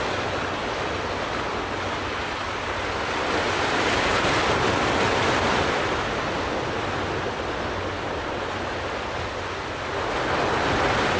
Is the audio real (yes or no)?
yes